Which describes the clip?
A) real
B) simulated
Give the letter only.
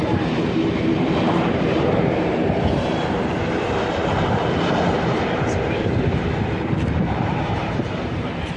B